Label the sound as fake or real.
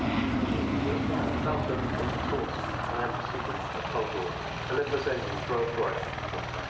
real